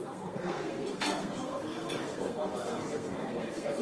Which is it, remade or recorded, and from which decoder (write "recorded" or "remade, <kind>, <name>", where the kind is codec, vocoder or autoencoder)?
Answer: remade, codec, SNAC